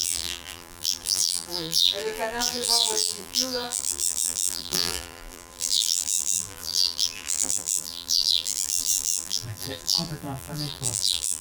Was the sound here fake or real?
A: fake